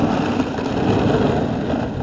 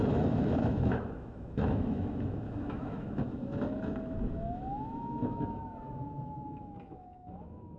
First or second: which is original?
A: first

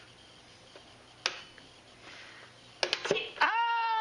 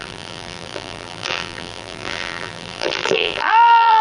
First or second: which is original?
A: first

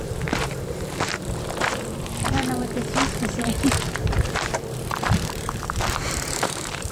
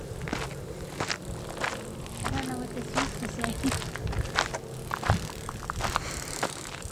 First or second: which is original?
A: second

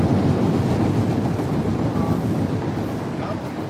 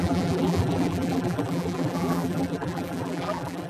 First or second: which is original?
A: first